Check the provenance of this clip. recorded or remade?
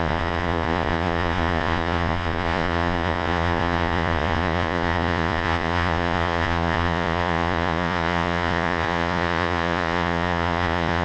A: remade